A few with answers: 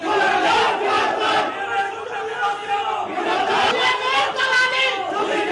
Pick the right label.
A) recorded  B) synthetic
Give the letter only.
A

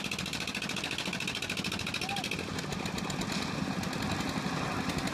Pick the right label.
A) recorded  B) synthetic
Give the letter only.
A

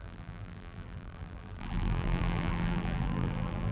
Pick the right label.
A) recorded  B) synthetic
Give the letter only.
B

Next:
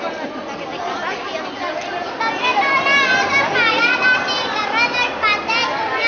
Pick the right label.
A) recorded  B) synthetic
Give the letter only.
B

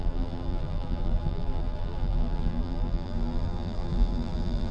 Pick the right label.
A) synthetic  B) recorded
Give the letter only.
A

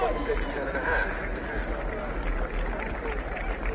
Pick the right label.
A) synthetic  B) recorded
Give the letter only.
B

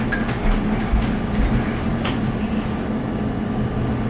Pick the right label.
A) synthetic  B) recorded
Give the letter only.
B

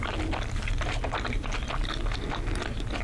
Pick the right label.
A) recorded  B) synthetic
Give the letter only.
A